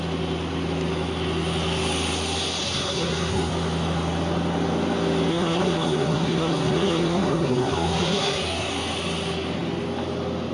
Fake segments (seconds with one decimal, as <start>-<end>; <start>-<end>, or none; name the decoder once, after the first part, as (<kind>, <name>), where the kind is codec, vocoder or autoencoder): 2.6-3.5 (codec, SNAC); 5.3-8.7